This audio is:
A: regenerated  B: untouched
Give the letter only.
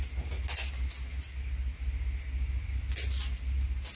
B